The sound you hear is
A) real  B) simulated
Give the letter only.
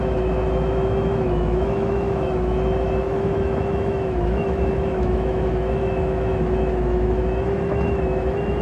B